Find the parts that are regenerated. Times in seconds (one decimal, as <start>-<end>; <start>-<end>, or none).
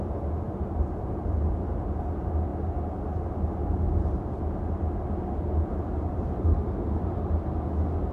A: none